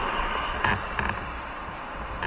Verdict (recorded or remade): recorded